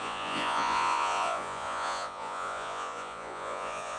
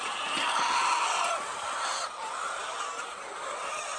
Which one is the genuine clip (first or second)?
second